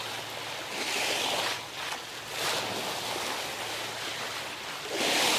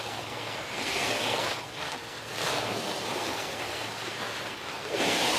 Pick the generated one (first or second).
second